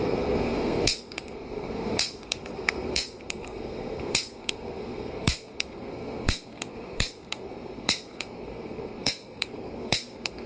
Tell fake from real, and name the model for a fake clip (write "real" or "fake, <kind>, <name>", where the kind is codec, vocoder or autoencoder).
fake, codec, SNAC